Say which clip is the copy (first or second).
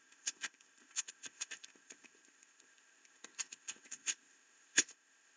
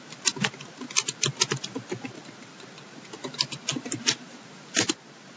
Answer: first